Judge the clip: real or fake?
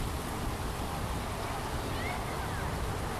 real